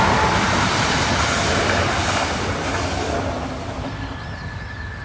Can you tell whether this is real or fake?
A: real